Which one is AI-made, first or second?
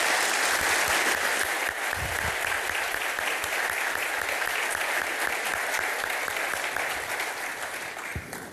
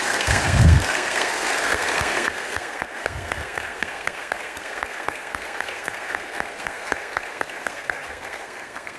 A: second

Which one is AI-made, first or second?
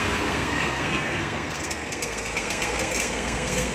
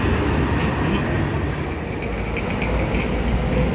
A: first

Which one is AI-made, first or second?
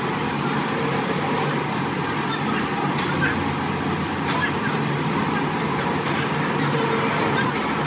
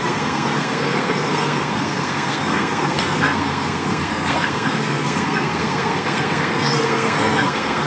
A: second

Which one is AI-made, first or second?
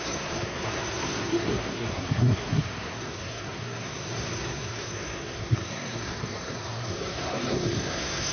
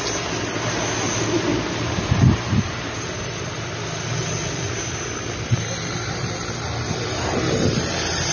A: first